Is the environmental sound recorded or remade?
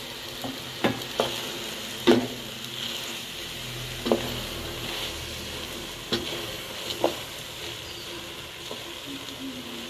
recorded